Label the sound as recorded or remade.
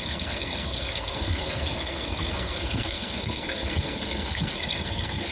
remade